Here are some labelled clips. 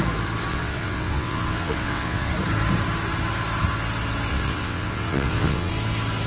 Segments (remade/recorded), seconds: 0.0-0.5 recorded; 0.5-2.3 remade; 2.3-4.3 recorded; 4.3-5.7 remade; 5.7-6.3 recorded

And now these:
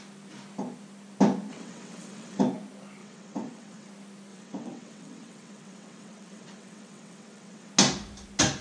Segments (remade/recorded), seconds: 0.0-1.5 recorded; 1.5-2.4 remade; 2.4-3.0 recorded; 3.0-3.9 remade; 3.9-4.3 recorded; 4.3-7.7 remade; 7.7-8.6 recorded

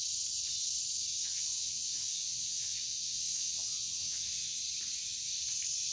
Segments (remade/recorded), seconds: 0.0-1.1 recorded; 1.1-4.6 remade; 4.6-5.9 recorded

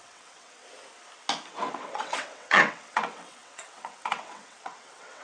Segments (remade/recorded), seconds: 0.0-0.6 remade; 0.6-1.5 recorded; 1.5-5.2 remade

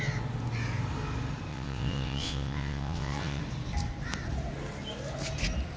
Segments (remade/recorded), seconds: 0.0-1.5 recorded; 1.5-3.4 remade; 3.4-5.8 recorded

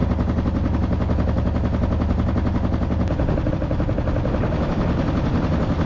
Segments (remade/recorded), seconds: 0.0-5.9 recorded

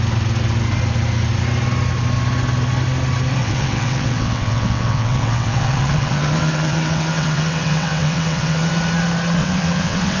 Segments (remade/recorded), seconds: 0.0-3.4 recorded; 3.4-8.7 remade; 8.7-9.4 recorded; 9.4-10.2 remade